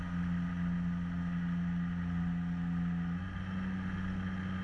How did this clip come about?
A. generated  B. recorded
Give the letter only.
B